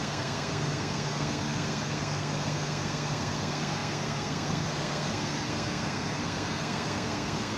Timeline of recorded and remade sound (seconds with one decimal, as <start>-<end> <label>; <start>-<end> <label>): 0.0-7.6 remade